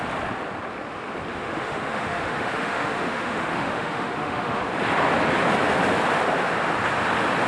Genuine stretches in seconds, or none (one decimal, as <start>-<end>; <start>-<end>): 0.0-1.3; 4.6-7.5

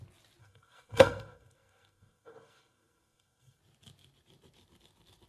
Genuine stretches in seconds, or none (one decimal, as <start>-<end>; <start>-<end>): 0.0-0.4; 3.6-5.3

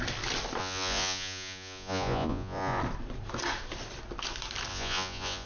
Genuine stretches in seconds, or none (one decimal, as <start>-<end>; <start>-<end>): 0.0-0.6; 2.8-4.7

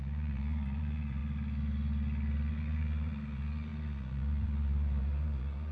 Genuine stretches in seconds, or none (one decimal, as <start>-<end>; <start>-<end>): 1.2-2.5

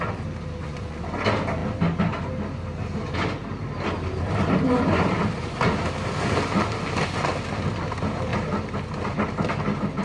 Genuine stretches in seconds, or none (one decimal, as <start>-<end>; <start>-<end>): 0.0-0.6; 1.2-10.0

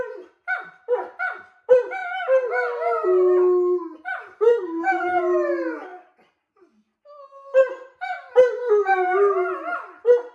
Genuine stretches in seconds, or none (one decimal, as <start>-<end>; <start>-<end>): 0.0-4.5; 5.2-10.3

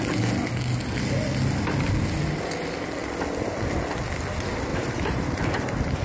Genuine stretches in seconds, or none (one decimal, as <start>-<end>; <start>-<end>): 0.0-4.7; 5.4-6.0